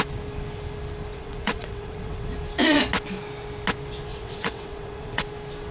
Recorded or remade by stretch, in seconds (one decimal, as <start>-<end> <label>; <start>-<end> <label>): 0.0-1.1 recorded; 1.1-2.3 remade; 2.3-4.1 recorded; 4.1-5.2 remade; 5.2-5.7 recorded